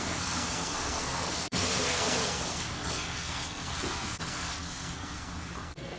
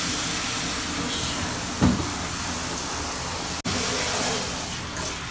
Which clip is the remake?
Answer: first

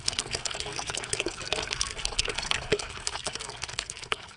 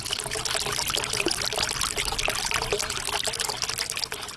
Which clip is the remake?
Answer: first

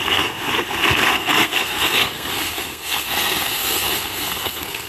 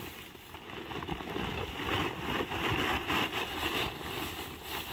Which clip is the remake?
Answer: first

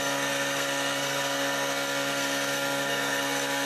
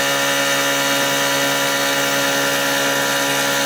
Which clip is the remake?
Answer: first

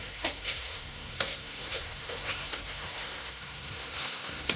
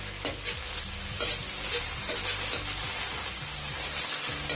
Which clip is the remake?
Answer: first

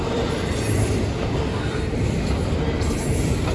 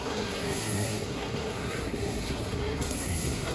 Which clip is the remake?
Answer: second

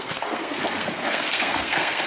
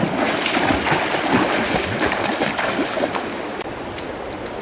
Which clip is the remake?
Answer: first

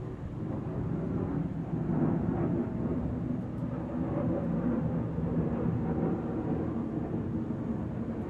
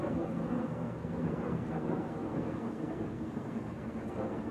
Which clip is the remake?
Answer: second